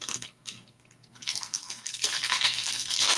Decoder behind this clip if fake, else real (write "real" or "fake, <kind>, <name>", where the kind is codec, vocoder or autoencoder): fake, codec, SNAC